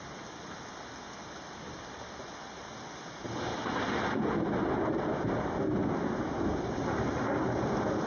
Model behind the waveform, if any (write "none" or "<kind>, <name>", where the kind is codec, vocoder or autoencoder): none